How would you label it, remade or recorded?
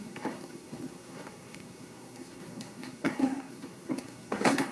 remade